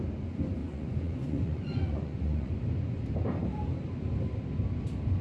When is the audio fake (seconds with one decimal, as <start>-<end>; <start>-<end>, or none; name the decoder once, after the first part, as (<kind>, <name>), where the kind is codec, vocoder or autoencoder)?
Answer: 0.6-2.5 (vocoder, Vocos)